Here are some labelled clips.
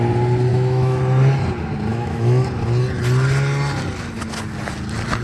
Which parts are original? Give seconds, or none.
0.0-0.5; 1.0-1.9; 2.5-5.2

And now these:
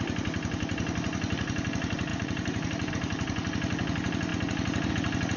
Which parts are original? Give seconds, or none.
0.0-2.1; 2.9-5.4